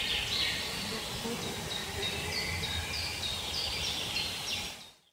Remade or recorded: recorded